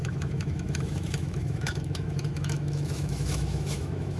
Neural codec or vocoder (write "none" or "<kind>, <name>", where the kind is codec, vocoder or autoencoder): autoencoder, DAC-VAE